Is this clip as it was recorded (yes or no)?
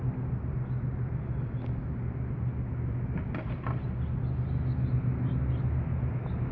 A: yes